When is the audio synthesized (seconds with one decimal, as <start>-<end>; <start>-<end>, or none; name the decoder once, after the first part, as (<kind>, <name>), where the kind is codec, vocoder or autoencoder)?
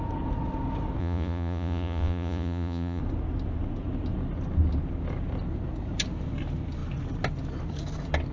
1.0-3.0 (vocoder, Vocos)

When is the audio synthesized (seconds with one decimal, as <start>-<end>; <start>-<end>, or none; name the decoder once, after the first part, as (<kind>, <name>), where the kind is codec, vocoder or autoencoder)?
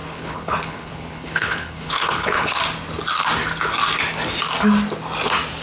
0.0-2.6 (codec, HILCodec)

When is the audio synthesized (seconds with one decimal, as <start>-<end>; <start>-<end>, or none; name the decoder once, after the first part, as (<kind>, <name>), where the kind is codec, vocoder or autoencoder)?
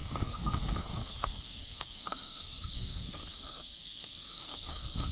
0.0-5.1 (codec, SNAC)